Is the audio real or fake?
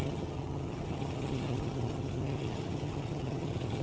fake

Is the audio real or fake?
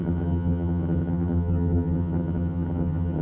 fake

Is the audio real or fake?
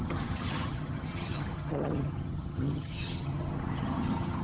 fake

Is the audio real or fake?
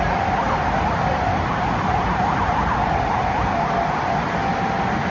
real